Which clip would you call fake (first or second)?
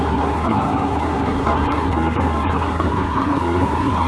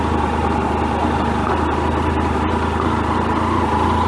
first